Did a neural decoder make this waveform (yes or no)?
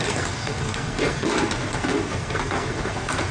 yes